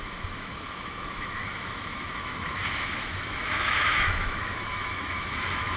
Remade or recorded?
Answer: remade